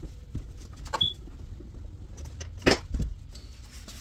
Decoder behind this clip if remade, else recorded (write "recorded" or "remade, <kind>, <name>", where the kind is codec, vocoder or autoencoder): recorded